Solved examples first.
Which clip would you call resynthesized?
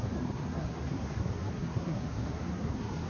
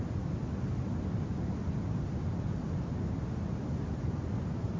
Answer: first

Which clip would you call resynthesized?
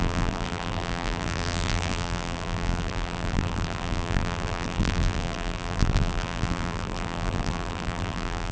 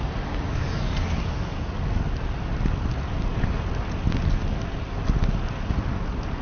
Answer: first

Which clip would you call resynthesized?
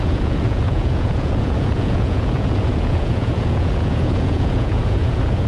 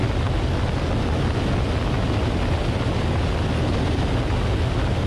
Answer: first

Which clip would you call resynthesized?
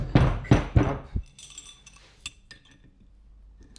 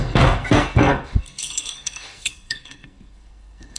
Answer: second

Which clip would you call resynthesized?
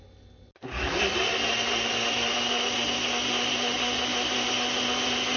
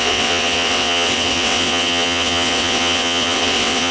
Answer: second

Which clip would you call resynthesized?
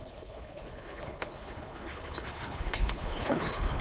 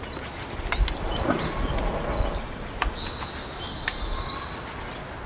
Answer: first